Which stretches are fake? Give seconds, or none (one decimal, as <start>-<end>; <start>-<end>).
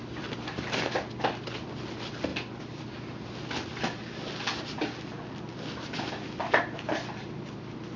none